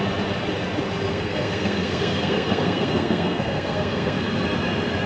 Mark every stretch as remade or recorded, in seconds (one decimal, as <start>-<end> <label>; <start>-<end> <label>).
0.0-1.1 recorded; 1.1-4.2 remade; 4.2-5.1 recorded